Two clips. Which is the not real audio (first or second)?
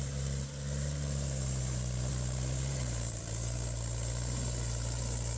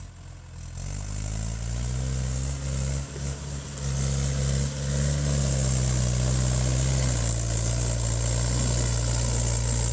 first